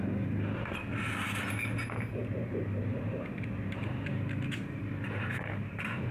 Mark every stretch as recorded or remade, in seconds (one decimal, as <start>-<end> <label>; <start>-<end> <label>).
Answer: 0.0-2.2 recorded; 2.2-6.1 remade